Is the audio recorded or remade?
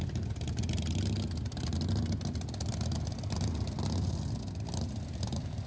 recorded